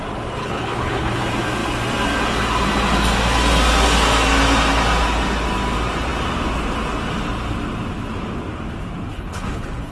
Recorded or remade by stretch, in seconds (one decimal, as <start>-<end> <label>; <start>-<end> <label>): 0.0-0.4 recorded; 0.4-1.2 remade; 1.2-9.1 recorded; 9.1-9.9 remade